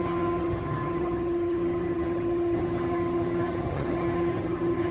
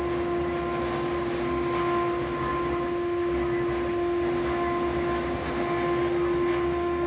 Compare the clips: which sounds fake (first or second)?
first